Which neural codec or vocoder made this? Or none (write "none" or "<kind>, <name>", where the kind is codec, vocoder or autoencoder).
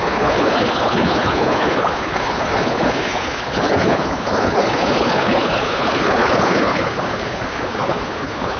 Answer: codec, HILCodec